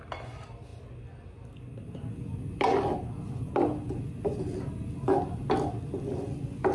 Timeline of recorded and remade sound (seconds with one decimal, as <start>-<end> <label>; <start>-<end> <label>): 0.0-6.7 recorded